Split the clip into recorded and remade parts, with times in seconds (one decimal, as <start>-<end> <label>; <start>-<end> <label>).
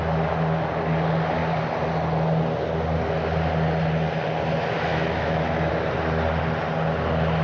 0.0-4.9 recorded; 4.9-5.7 remade; 5.7-7.4 recorded